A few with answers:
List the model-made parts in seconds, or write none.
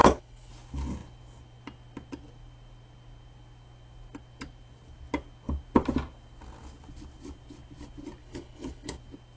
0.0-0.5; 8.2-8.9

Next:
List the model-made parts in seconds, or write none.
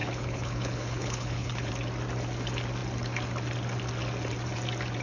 0.0-1.7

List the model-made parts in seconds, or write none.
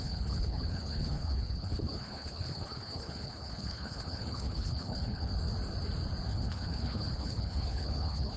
0.0-5.3; 6.3-8.4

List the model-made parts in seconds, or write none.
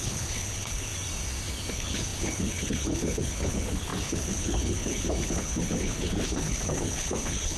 0.0-0.9; 1.7-7.6